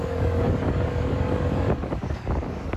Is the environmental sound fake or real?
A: fake